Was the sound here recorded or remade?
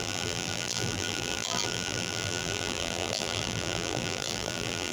remade